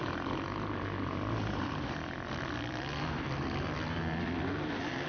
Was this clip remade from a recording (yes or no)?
yes